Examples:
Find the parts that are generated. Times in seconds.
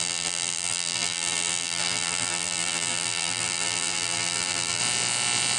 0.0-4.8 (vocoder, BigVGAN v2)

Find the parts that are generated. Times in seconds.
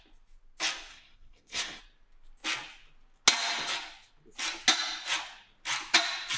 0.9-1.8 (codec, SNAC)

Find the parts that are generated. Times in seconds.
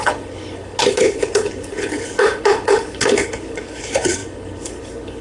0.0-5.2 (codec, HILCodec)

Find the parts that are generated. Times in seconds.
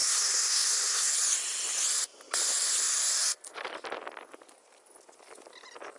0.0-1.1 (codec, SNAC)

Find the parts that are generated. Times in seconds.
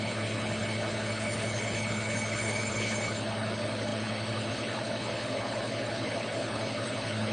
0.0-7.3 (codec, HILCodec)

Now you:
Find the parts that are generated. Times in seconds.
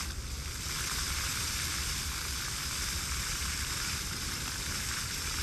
0.0-5.4 (vocoder, BigVGAN v2)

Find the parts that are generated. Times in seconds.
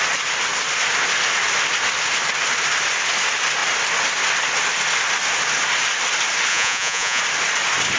6.5-7.2 (vocoder, Vocos)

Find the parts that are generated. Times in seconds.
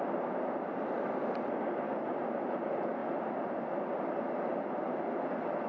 none